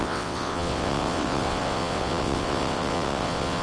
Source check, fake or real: fake